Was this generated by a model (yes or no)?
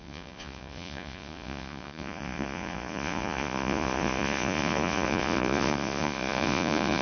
yes